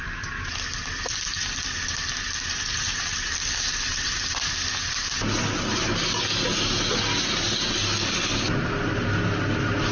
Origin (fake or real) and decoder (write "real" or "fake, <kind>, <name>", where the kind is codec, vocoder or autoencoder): real